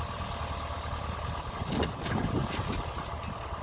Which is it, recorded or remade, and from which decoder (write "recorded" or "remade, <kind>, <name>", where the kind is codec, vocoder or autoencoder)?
recorded